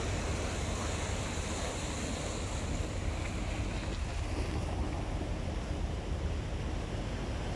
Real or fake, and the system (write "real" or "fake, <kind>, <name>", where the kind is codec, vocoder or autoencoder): real